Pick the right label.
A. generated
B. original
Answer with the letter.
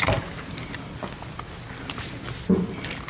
B